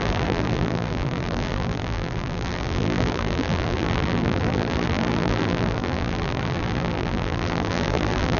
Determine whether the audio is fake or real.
fake